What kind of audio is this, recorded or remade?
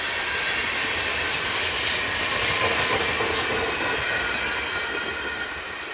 recorded